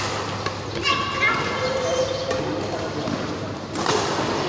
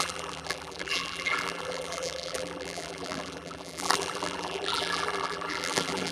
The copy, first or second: second